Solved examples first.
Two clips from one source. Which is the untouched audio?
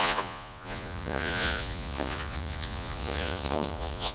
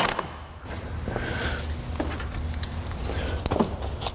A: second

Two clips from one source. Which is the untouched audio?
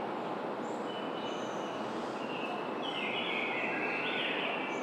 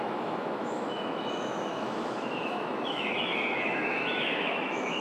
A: first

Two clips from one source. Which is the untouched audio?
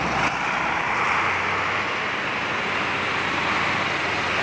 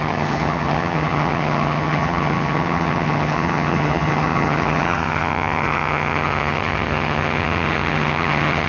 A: first